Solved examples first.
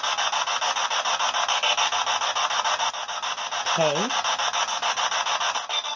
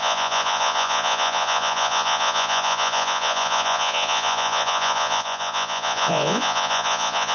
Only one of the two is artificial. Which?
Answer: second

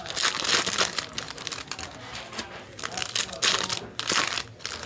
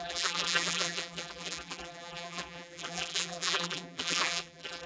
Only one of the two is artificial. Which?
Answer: second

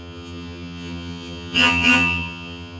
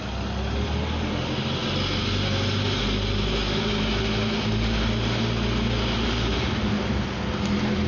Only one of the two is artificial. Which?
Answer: first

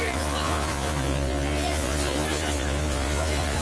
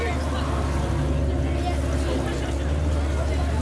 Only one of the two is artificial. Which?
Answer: first